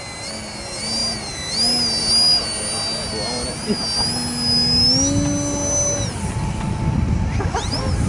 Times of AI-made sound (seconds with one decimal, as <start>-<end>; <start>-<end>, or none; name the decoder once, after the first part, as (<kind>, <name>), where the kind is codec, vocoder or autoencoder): none